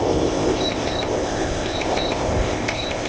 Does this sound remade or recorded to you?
remade